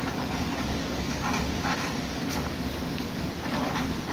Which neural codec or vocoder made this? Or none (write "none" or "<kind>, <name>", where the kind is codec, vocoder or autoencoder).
codec, DAC